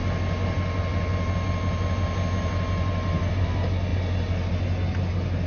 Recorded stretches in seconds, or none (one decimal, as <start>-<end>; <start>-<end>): 0.0-5.5